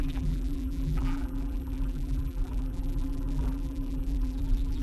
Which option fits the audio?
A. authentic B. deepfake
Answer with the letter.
B